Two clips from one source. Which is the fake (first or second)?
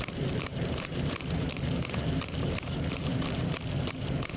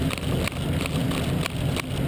first